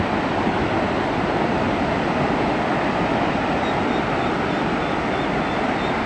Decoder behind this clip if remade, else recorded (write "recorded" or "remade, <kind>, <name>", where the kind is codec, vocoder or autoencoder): recorded